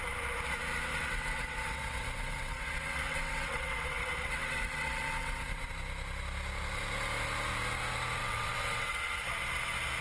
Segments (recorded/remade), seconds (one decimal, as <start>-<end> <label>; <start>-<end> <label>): 0.0-0.9 recorded; 0.9-5.7 remade; 5.7-8.2 recorded; 8.2-9.2 remade; 9.2-10.0 recorded